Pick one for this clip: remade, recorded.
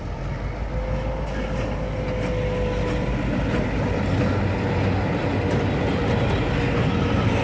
recorded